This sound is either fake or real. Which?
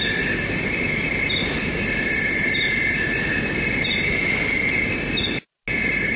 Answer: real